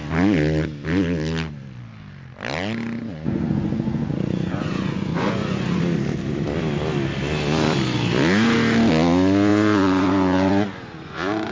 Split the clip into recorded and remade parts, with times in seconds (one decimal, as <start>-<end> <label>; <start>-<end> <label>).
0.0-3.0 recorded; 3.0-5.8 remade; 5.8-9.5 recorded; 9.5-11.5 remade